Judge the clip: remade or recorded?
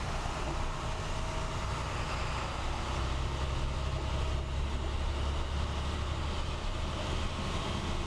recorded